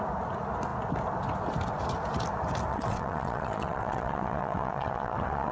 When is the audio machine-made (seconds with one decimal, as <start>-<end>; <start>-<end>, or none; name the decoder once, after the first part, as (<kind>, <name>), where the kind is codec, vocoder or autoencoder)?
2.7-5.5 (vocoder, WaveNeXt)